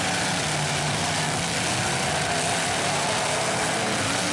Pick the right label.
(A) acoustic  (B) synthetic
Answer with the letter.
A